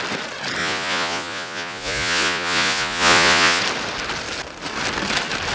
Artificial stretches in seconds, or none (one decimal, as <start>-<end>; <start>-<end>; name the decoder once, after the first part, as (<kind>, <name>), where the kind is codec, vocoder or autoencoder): 0.6-3.6 (vocoder, Vocos)

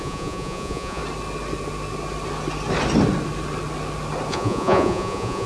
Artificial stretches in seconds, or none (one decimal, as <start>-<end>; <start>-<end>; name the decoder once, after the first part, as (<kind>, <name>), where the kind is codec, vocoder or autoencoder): 0.0-1.0 (vocoder, Vocos); 4.3-5.5

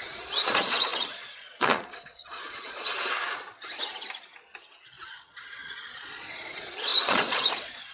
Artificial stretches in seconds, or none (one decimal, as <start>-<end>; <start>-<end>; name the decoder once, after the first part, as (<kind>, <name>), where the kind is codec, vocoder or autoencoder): 0.0-2.8 (vocoder, Vocos); 5.1-7.9

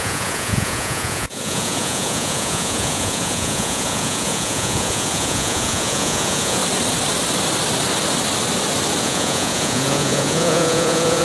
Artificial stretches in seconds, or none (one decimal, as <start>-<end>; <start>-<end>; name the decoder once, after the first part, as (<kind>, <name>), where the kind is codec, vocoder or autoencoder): 0.0-6.6 (vocoder, Vocos); 9.0-11.2

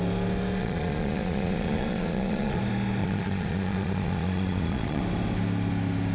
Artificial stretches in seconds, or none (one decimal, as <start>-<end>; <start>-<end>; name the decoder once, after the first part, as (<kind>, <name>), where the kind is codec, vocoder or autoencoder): 0.6-2.6 (vocoder, Vocos); 3.0-5.0

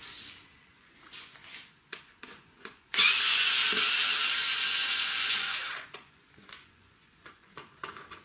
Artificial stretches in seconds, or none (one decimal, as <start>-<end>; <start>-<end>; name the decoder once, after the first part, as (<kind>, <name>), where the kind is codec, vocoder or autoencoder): 0.0-3.6 (vocoder, Vocos); 4.3-8.2

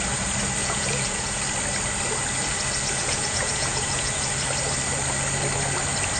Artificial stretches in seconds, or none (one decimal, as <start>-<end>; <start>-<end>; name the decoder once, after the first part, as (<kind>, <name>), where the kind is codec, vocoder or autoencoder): 0.6-1.4 (vocoder, Vocos); 3.0-4.3